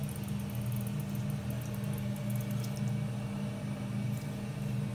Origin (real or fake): real